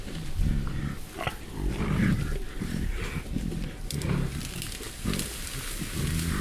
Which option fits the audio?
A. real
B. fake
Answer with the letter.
A